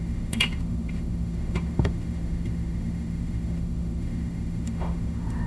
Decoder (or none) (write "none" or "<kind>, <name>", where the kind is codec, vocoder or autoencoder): autoencoder, DAC-VAE